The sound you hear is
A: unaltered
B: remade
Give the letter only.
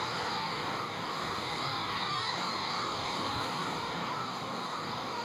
B